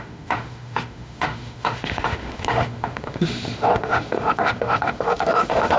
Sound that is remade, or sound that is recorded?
remade